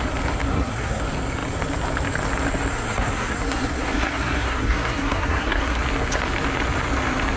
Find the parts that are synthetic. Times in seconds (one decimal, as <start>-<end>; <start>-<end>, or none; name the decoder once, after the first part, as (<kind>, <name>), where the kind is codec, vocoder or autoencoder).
0.5-1.0 (codec, SNAC); 2.7-5.8